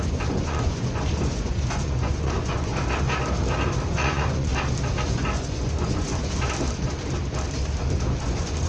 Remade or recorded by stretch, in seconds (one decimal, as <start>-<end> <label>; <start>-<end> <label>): 0.0-2.7 remade; 2.7-3.9 recorded; 3.9-4.5 remade; 4.5-5.1 recorded; 5.1-6.1 remade; 6.1-8.2 recorded; 8.2-8.7 remade